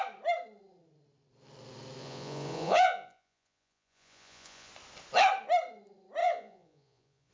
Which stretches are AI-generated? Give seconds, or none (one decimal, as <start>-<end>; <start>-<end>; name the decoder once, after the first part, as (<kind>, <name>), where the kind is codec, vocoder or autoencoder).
2.0-4.7 (vocoder, Vocos); 6.2-7.3